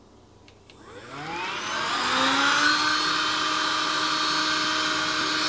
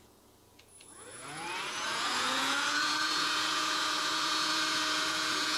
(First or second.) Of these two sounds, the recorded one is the first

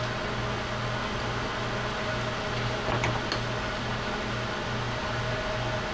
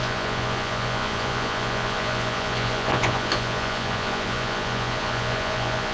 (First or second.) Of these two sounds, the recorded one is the first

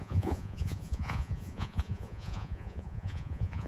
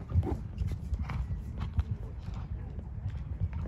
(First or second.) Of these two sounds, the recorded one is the second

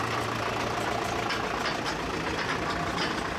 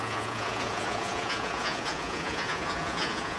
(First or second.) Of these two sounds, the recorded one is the first